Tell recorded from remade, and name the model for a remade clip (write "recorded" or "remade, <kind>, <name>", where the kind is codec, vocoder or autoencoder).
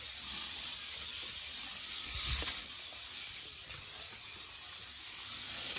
remade, vocoder, BigVGAN v2